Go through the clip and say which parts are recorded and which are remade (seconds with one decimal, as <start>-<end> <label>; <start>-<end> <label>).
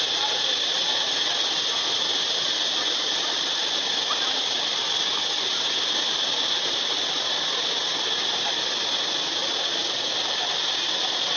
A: 0.0-11.4 recorded